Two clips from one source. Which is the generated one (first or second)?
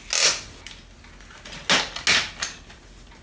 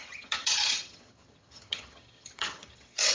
second